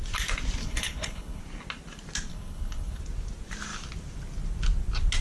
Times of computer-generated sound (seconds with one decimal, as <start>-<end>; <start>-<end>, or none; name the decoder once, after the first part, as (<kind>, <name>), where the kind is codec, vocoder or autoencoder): 0.6-1.4 (codec, HILCodec); 2.3-3.0